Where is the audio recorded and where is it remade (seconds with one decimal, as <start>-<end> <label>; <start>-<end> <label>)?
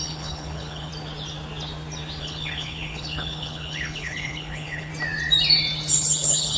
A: 0.0-0.9 remade; 0.9-2.2 recorded; 2.2-4.9 remade; 4.9-5.9 recorded; 5.9-6.6 remade